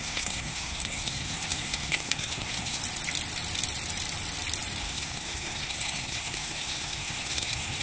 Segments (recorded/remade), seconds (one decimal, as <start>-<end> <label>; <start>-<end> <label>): 0.0-2.8 remade; 2.8-4.8 recorded; 4.8-7.8 remade